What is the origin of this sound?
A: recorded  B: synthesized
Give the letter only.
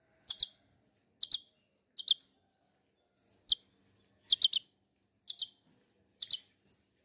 A